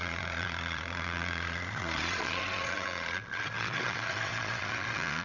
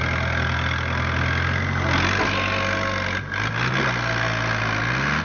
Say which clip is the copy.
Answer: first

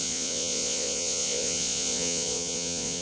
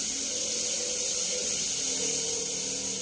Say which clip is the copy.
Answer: first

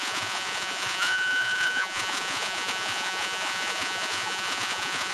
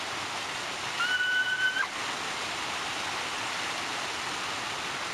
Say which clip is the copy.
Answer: first